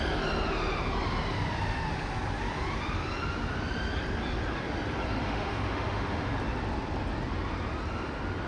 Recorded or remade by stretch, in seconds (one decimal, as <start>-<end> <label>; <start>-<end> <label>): 0.0-5.2 recorded; 5.2-6.3 remade; 6.3-8.5 recorded